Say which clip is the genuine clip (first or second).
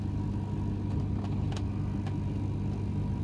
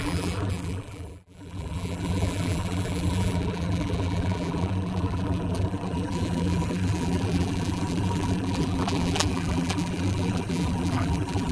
first